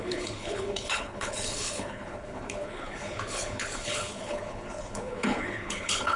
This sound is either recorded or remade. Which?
remade